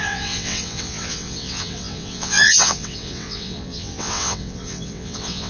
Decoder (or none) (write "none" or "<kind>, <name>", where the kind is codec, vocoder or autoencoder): vocoder, WaveNeXt